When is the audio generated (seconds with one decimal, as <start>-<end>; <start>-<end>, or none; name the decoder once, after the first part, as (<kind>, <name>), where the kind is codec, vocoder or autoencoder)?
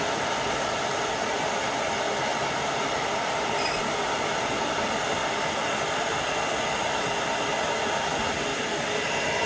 2.3-6.0 (vocoder, BigVGAN v2)